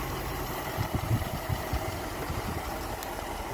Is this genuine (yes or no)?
no